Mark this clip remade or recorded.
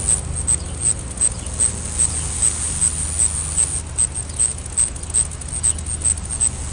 recorded